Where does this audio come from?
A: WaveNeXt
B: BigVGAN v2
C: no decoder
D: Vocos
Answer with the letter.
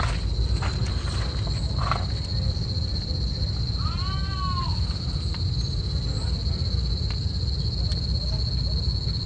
C